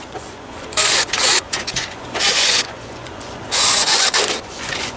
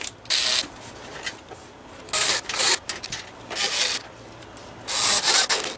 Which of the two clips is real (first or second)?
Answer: second